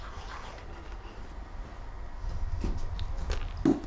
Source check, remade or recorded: recorded